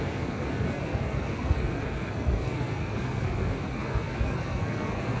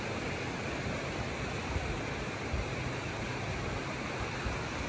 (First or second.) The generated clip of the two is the first